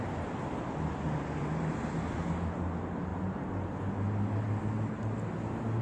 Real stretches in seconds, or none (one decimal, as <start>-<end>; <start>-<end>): 0.0-5.8